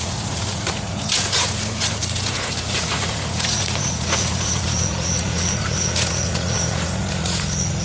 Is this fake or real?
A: fake